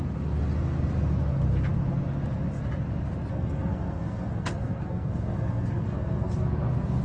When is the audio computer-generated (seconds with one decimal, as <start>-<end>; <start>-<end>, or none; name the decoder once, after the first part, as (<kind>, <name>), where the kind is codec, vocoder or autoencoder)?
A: 3.3-6.3 (codec, SNAC)